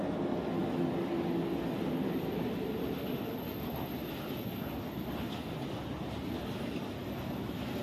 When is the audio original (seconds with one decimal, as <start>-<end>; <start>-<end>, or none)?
0.0-7.8